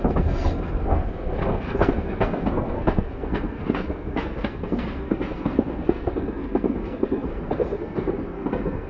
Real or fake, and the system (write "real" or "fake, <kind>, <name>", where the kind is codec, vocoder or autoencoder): fake, codec, SNAC